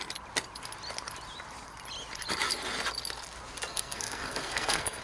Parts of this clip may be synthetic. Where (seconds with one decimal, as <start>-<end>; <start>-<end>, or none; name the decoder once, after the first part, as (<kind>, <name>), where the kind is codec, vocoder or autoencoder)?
3.7-5.0 (codec, SNAC)

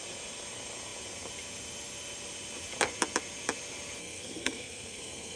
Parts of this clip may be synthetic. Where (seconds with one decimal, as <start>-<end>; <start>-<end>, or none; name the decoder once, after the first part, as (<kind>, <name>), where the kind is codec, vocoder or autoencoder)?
4.0-5.4 (codec, SNAC)

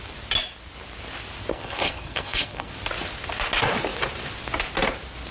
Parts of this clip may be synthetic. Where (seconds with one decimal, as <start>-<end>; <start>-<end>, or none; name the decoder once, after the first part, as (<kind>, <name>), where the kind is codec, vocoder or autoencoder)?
1.5-2.7 (codec, SNAC)